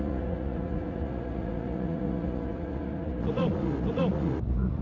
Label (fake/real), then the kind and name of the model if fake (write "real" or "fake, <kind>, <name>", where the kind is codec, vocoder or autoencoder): fake, vocoder, Vocos